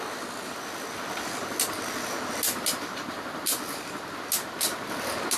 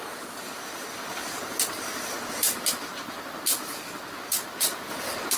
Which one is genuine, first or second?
first